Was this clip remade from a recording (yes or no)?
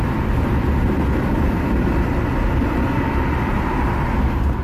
no